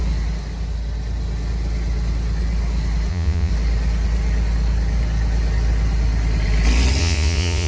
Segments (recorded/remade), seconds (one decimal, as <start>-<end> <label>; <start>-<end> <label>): 0.0-3.1 recorded; 3.1-3.5 remade; 3.5-7.0 recorded; 7.0-7.7 remade